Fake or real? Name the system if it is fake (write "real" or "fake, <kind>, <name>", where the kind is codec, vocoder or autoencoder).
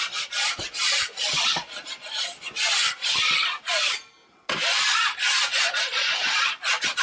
real